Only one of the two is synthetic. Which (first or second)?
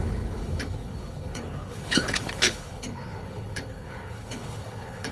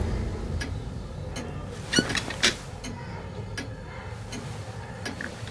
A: first